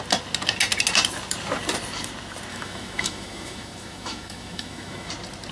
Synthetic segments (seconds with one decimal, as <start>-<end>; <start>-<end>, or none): 2.5-5.1